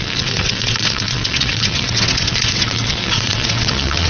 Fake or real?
fake